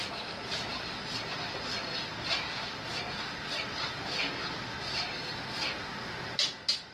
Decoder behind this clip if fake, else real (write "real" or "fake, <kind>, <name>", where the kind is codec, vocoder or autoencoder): real